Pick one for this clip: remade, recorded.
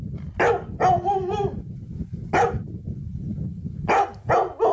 recorded